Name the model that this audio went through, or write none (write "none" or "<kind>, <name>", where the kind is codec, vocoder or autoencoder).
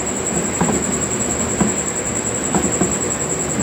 none